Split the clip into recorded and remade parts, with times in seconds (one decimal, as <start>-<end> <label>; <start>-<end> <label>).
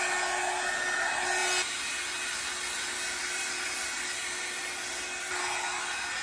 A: 0.0-6.2 recorded